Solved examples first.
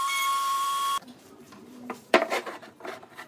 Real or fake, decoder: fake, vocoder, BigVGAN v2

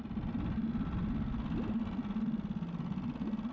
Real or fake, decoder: real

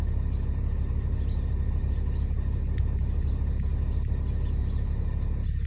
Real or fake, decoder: real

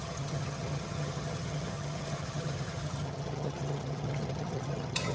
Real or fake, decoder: fake, vocoder, HiFi-GAN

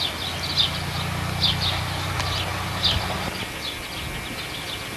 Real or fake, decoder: real